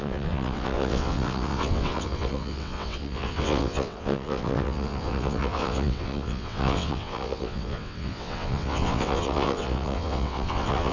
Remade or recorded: remade